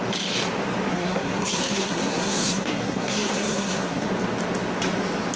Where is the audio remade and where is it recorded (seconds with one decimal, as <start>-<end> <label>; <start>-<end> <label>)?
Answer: 0.0-0.9 recorded; 0.9-4.1 remade; 4.1-5.4 recorded